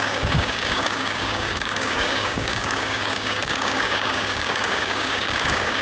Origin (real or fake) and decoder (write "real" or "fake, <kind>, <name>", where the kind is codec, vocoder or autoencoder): fake, codec, DAC